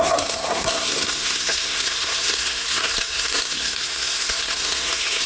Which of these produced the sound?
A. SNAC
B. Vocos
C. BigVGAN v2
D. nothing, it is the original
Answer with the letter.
A